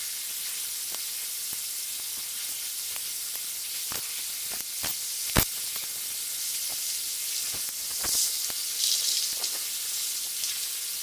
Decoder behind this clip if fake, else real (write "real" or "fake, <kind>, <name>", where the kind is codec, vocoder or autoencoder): real